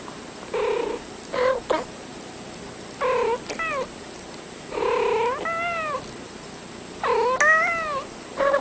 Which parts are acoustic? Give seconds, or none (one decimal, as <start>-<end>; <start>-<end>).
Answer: 0.0-8.6